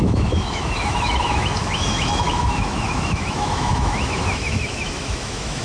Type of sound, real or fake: fake